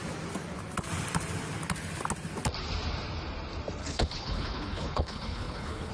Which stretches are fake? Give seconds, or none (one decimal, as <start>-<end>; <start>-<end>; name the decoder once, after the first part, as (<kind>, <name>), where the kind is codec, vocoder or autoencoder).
3.8-5.9 (codec, HILCodec)